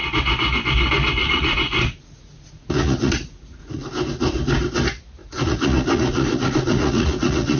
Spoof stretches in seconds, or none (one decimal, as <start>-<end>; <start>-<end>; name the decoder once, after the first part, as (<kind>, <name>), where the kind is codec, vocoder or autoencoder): 1.2-3.9 (vocoder, Vocos); 5.2-7.6